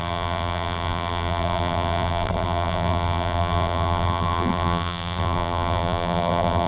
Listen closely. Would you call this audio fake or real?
fake